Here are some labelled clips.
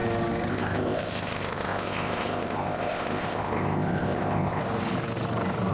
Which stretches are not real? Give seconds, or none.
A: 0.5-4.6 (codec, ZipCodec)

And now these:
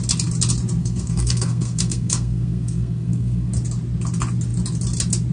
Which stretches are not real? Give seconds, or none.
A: 0.8-3.5 (codec, SNAC)

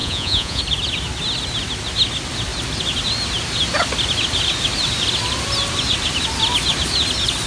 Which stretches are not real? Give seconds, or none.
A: 0.0-0.6 (vocoder, Vocos)